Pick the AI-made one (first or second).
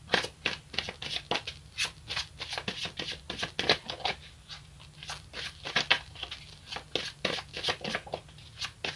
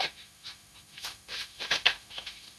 second